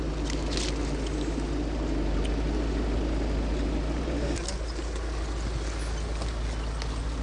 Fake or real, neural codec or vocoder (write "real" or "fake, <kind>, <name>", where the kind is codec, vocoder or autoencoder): real